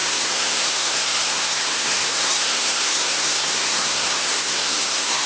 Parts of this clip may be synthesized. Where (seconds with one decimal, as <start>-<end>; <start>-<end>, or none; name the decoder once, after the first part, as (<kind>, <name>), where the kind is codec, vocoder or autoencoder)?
0.0-5.3 (codec, SNAC)

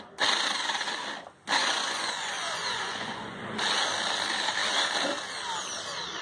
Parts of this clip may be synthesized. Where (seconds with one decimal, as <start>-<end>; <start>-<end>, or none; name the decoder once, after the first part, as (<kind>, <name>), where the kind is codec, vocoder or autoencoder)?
1.6-3.4 (vocoder, Vocos)